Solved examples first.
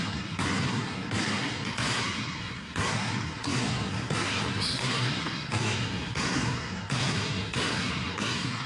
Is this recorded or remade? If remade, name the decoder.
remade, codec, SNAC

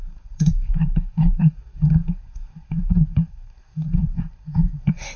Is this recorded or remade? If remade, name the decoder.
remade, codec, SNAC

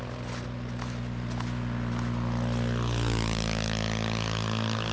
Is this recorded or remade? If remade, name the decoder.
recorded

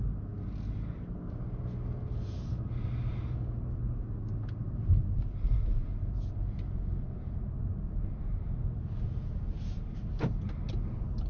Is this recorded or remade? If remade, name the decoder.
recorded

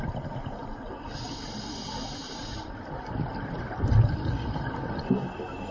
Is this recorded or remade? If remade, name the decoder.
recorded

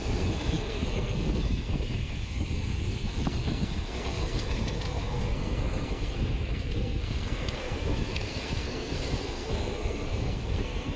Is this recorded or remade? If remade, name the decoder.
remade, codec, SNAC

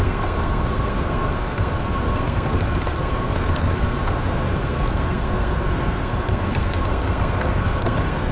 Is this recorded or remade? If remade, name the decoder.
remade, codec, SNAC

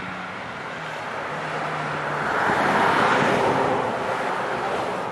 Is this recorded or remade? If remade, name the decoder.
recorded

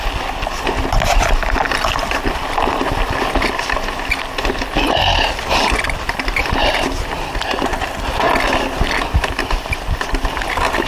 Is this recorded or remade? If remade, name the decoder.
recorded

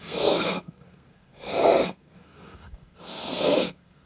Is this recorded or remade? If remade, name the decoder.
remade, codec, SNAC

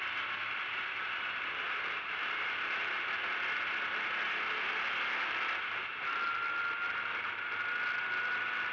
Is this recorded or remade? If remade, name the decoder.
recorded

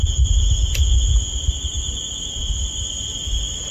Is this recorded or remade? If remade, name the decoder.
recorded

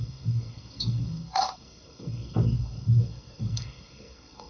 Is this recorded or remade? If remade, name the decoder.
remade, codec, SNAC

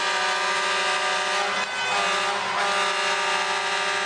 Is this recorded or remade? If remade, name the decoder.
recorded